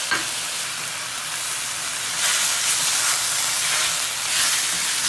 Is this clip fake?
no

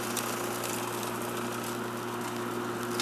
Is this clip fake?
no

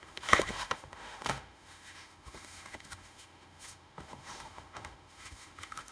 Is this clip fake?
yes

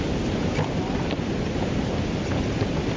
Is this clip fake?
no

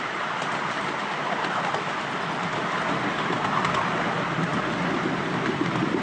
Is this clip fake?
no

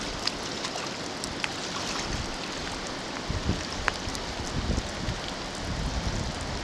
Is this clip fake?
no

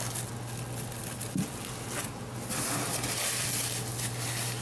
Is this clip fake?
no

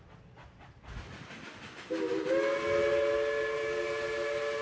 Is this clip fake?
no